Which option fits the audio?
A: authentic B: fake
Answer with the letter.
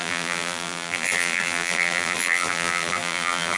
B